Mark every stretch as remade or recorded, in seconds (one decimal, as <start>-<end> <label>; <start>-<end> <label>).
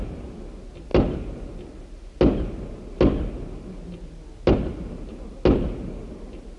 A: 0.0-6.6 recorded